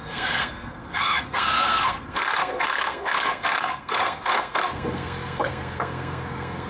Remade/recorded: remade